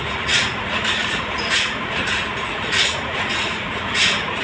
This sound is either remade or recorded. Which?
remade